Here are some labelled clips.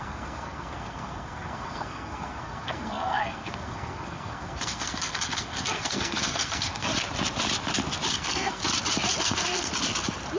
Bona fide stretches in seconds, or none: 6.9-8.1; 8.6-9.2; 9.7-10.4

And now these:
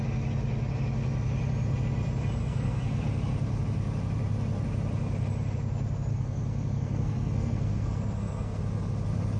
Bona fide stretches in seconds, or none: 0.0-2.4; 3.0-6.1; 8.6-9.4

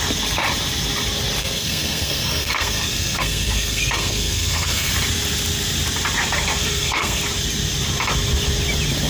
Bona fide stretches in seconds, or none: 0.0-1.4; 4.9-6.6; 7.2-9.1